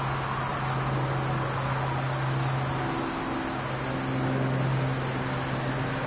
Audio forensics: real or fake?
real